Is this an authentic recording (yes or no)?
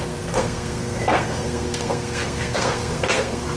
no